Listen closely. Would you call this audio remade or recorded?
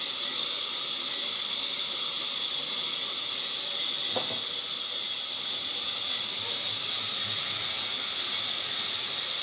recorded